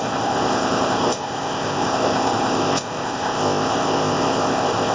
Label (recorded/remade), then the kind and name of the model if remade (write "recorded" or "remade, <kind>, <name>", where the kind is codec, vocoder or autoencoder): remade, codec, ZipCodec